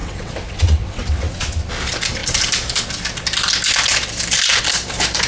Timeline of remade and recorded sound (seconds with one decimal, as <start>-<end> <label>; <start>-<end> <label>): 0.0-1.4 remade; 1.4-5.3 recorded

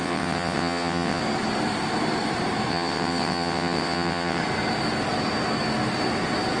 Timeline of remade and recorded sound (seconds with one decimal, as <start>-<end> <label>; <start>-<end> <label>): 0.0-1.2 remade; 1.2-2.7 recorded; 2.7-4.4 remade; 4.4-6.6 recorded

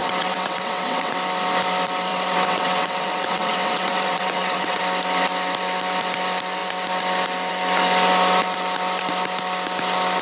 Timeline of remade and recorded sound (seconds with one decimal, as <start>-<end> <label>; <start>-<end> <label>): 0.0-1.1 remade; 1.1-2.1 recorded; 2.1-4.8 remade; 4.8-10.2 recorded

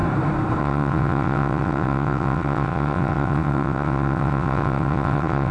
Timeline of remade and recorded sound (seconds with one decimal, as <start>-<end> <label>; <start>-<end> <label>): 0.0-0.6 recorded; 0.6-5.5 remade

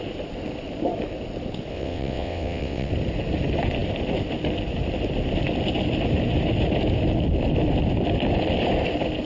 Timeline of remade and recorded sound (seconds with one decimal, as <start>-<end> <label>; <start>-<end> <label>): 0.0-1.7 recorded; 1.7-2.9 remade; 2.9-9.3 recorded

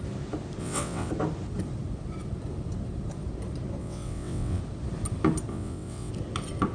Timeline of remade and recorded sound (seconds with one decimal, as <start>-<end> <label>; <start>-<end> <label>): 0.0-0.6 recorded; 0.6-1.1 remade; 1.1-3.8 recorded; 3.8-4.6 remade; 4.6-5.5 recorded; 5.5-6.1 remade; 6.1-6.7 recorded

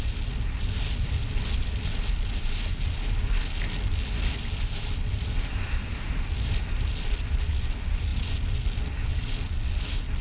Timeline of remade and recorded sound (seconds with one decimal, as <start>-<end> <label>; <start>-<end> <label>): 0.0-10.2 recorded